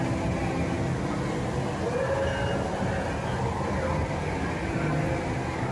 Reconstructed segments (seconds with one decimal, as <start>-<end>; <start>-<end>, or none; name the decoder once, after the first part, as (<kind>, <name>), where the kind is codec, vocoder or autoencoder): none